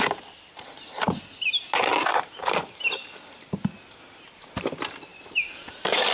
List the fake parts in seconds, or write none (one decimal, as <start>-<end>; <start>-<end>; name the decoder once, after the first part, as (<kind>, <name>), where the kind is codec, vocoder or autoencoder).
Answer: 5.1-6.1 (vocoder, BigVGAN v2)